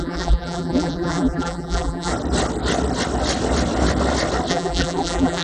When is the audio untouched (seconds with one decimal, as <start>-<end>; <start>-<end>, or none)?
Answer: 2.1-4.5